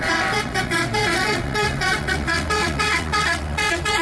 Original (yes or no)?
no